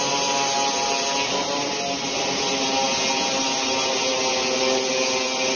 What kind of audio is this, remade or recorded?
recorded